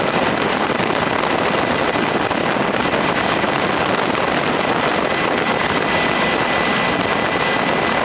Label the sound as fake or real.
real